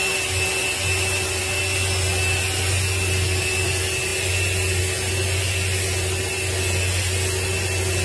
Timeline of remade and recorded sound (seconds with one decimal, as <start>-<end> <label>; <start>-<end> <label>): 0.0-8.0 recorded